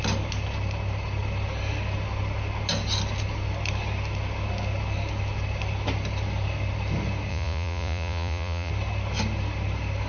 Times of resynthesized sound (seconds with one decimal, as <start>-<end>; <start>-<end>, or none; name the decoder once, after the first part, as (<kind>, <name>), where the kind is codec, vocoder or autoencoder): 7.3-8.7 (vocoder, Vocos)